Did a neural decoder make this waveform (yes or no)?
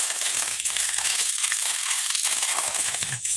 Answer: yes